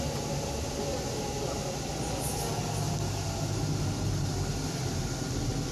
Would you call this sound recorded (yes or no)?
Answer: yes